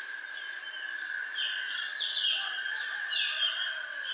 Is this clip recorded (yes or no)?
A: yes